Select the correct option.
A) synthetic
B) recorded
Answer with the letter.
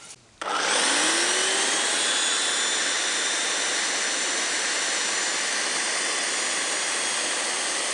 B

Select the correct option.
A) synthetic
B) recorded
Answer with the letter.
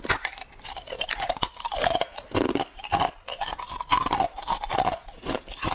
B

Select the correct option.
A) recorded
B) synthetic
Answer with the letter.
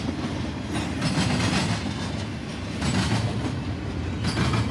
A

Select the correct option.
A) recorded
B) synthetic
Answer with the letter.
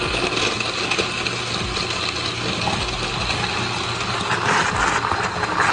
A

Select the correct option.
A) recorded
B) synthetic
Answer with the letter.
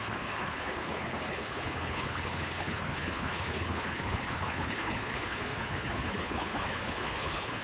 B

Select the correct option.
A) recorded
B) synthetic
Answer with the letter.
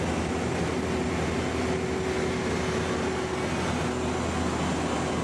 A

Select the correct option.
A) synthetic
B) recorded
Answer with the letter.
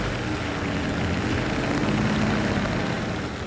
B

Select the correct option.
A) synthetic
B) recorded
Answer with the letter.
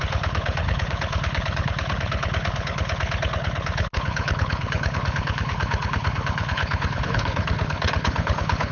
A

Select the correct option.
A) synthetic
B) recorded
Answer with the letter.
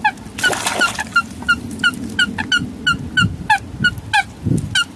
B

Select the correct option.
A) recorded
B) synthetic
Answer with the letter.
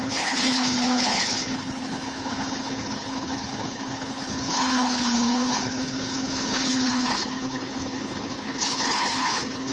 B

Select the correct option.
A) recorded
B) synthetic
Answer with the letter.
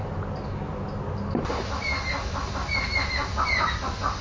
A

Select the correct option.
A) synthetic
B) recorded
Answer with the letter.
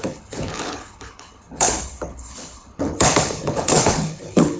A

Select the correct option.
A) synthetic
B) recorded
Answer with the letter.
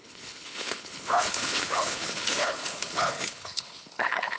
A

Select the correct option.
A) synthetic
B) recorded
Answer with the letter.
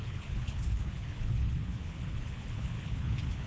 A